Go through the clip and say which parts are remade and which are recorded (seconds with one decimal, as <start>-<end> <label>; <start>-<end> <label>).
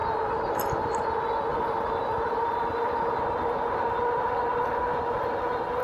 0.0-1.5 recorded; 1.5-4.8 remade; 4.8-5.8 recorded